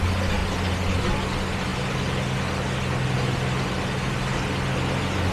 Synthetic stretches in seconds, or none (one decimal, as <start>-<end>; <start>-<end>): none